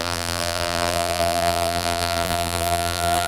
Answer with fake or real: fake